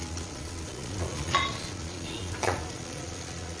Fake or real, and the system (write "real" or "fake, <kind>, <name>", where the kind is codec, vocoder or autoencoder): fake, vocoder, Vocos